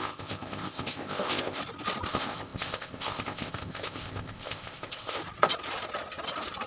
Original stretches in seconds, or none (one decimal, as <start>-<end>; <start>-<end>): 1.6-2.1; 5.2-6.7